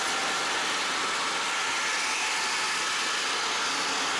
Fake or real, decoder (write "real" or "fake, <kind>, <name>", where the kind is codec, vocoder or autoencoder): real